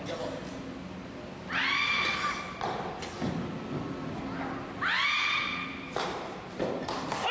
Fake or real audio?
real